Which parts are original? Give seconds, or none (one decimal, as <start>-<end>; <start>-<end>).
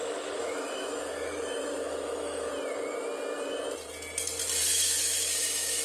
2.5-4.6